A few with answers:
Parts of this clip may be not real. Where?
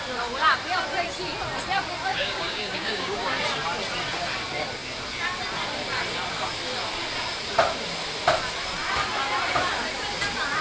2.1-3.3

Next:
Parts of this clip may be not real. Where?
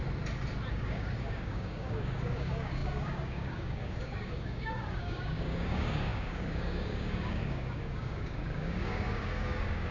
0.7-9.9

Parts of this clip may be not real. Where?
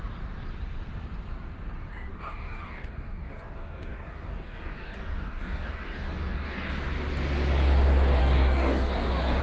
2.1-6.7; 8.2-9.4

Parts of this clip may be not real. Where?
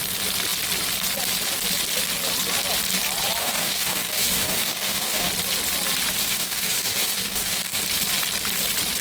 3.4-5.3; 6.2-7.8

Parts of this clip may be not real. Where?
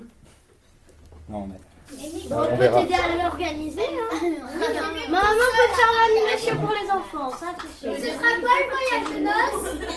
3.1-4.1; 5.7-6.6